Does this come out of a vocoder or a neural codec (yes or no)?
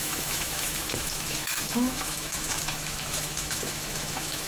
yes